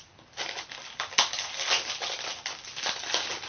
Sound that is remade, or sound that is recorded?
recorded